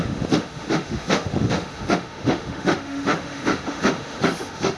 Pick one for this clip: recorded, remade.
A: remade